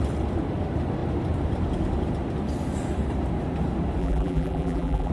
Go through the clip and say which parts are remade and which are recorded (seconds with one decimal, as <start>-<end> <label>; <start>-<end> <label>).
0.0-4.0 recorded; 4.0-5.1 remade